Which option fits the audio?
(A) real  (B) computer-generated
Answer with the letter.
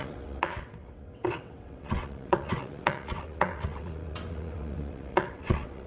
B